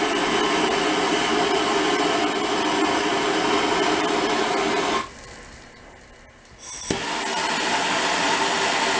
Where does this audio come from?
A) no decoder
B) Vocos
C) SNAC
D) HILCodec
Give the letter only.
A